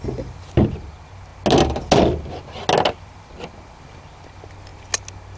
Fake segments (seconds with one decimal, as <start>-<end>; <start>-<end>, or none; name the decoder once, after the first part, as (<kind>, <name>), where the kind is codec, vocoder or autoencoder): none